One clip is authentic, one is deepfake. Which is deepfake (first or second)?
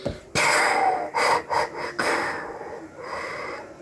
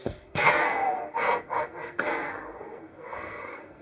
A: second